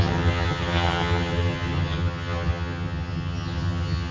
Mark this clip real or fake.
fake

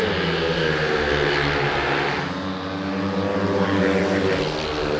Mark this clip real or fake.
real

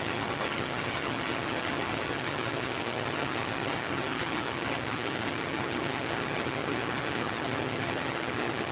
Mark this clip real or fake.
fake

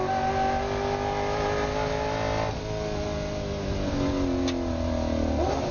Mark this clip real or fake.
real